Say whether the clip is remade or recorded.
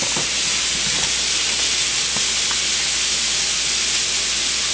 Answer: recorded